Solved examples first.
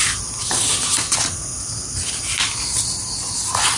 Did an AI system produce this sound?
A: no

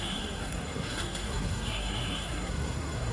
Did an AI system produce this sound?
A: yes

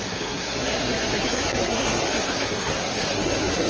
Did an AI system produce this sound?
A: yes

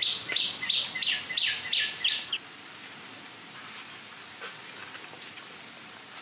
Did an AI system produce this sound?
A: no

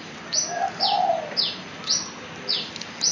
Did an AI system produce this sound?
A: no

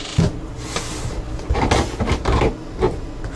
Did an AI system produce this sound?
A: no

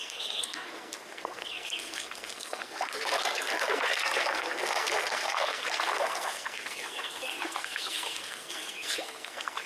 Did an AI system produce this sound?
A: yes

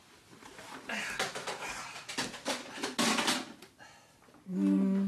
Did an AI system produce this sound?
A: no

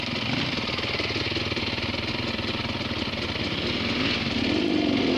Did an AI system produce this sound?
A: no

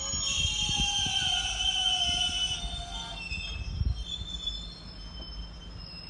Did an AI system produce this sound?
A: no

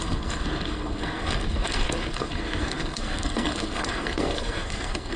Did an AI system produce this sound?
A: yes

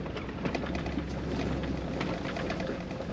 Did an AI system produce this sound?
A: no